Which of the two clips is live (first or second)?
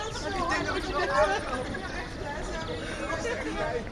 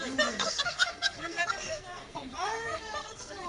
first